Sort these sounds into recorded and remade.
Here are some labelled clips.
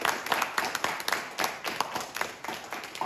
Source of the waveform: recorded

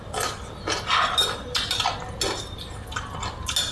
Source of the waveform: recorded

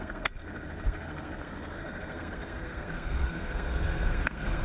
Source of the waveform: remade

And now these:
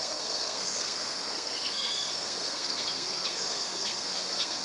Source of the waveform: remade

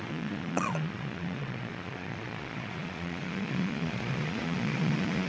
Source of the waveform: remade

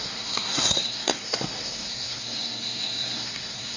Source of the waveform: remade